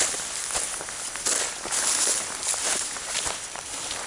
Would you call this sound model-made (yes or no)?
yes